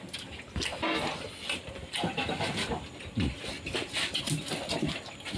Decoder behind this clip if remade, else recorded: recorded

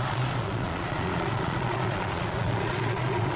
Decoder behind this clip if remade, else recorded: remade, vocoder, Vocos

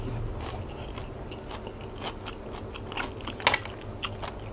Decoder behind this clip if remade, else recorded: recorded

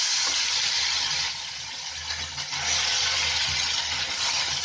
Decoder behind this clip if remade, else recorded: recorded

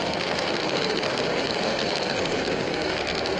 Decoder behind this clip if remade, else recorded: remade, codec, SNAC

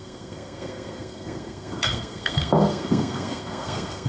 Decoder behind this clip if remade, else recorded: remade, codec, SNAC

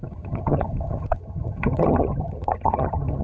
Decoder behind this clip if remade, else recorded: remade, vocoder, HiFi-GAN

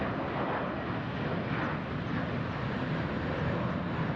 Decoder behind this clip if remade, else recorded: recorded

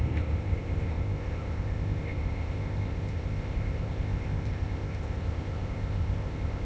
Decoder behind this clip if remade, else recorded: remade, codec, ZipCodec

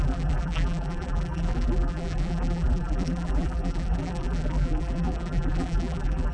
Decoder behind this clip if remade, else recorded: remade, vocoder, BigVGAN v2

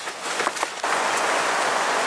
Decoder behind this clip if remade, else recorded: remade, vocoder, Vocos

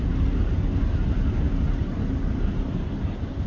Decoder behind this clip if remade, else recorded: recorded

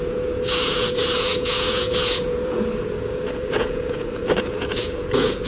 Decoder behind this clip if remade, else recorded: remade, vocoder, Vocos